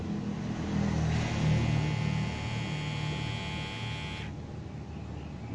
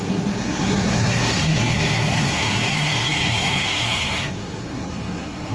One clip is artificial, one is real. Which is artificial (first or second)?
second